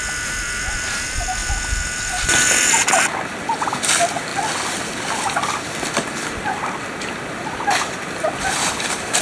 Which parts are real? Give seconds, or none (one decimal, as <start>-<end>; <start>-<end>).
0.0-9.2